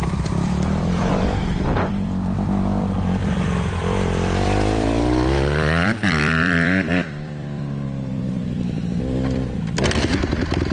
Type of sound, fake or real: fake